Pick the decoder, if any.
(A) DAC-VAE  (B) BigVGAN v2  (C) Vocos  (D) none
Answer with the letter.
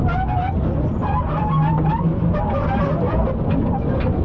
D